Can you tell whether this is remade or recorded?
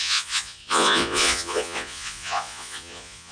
remade